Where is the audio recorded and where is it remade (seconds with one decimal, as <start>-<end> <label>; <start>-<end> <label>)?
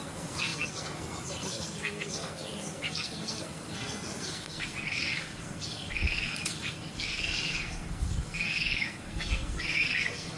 0.0-10.4 remade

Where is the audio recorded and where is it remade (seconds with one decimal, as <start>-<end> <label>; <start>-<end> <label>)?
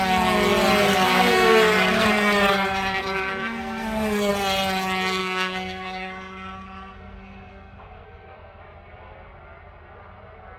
0.0-0.8 recorded; 0.8-4.3 remade; 4.3-5.2 recorded; 5.2-8.6 remade; 8.6-10.6 recorded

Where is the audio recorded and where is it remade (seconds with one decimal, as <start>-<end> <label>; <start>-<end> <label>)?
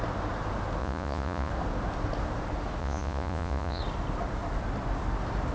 0.0-0.8 recorded; 0.8-1.5 remade; 1.5-2.8 recorded; 2.8-3.8 remade; 3.8-5.5 recorded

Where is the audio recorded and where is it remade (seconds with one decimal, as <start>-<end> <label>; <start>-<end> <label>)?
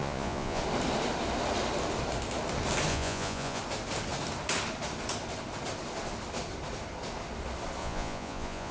0.0-0.6 remade; 0.6-2.9 recorded; 2.9-3.6 remade; 3.6-7.8 recorded; 7.8-8.7 remade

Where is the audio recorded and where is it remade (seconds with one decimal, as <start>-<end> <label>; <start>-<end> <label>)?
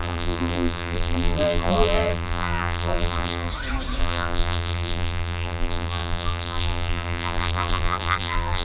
0.0-3.5 remade; 3.5-4.0 recorded; 4.0-8.6 remade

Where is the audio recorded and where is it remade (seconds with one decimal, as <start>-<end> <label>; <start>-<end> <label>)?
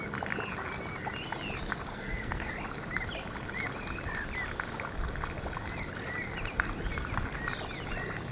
0.0-1.9 recorded; 1.9-2.5 remade; 2.5-8.3 recorded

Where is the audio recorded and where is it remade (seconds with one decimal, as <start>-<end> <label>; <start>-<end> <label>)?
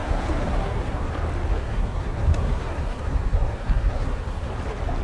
0.0-1.1 remade; 1.1-1.5 recorded; 1.5-4.5 remade; 4.5-5.0 recorded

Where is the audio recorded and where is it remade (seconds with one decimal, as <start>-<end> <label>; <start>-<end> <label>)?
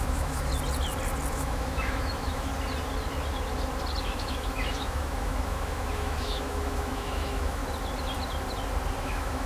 0.0-0.5 remade; 0.5-1.3 recorded; 1.3-2.5 remade; 2.5-4.0 recorded; 4.0-7.6 remade; 7.6-9.0 recorded; 9.0-9.5 remade